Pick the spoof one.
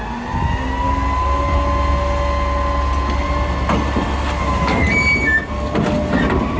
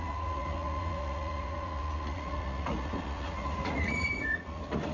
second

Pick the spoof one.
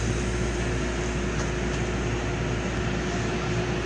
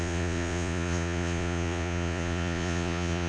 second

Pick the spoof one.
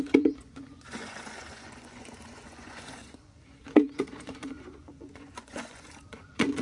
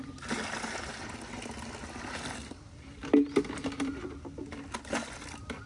first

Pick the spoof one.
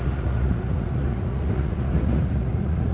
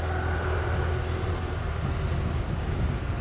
first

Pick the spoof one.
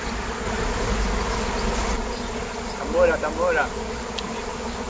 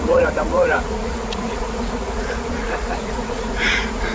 second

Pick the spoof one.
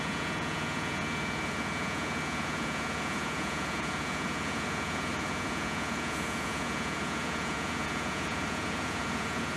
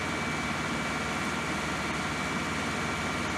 first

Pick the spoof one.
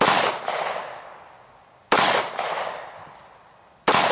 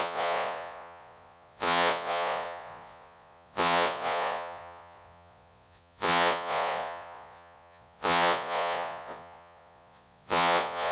second